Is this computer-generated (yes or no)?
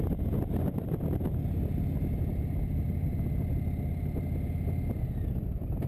no